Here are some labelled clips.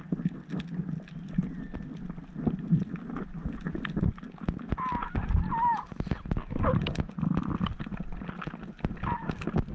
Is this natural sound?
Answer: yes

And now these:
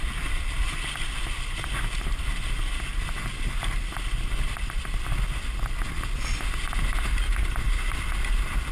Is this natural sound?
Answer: yes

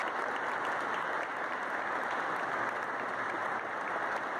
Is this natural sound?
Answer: yes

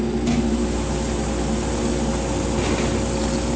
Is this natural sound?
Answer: yes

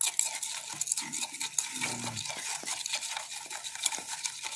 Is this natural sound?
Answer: yes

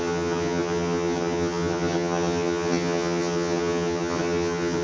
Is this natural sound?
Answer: no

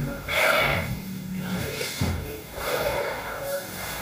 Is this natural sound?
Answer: no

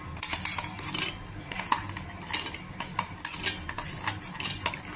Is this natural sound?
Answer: yes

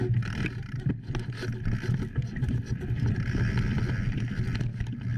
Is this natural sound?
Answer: yes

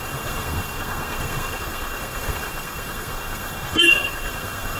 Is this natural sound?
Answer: no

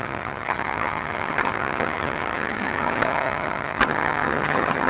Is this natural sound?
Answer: no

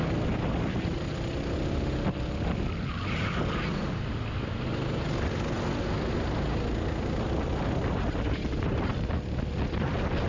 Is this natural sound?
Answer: yes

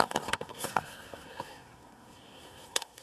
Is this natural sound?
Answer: no